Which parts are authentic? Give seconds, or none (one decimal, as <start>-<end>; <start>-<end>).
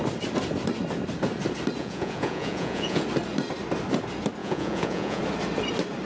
0.0-1.8; 3.0-4.4; 5.2-6.1